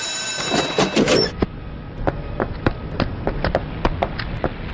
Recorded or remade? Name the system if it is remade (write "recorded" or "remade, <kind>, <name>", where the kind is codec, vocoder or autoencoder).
recorded